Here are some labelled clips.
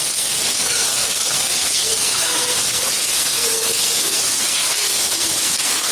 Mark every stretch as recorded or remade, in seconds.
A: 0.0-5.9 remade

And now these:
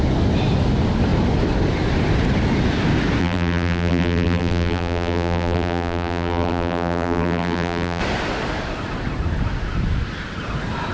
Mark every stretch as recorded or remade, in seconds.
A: 0.0-3.2 recorded; 3.2-8.0 remade; 8.0-10.9 recorded

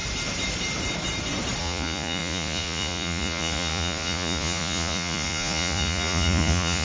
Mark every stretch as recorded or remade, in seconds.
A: 0.0-1.6 recorded; 1.6-6.8 remade

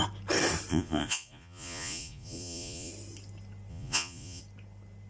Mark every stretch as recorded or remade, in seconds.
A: 0.0-0.7 recorded; 0.7-2.9 remade; 2.9-3.7 recorded; 3.7-4.4 remade; 4.4-5.1 recorded

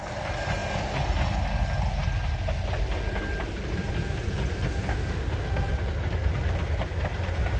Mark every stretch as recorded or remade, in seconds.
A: 0.0-4.9 recorded; 4.9-5.7 remade; 5.7-7.6 recorded

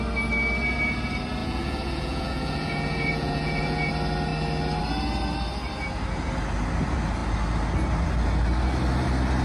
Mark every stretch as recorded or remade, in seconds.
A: 0.0-1.4 recorded; 1.4-3.9 remade; 3.9-9.4 recorded